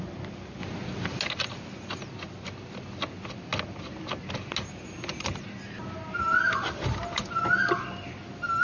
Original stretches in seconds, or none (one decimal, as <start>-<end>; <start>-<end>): 0.0-8.6